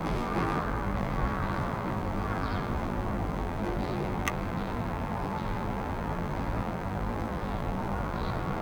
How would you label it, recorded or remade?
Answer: remade